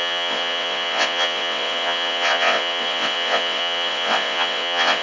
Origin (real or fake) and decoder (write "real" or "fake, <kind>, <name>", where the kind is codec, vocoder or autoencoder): fake, vocoder, WaveNeXt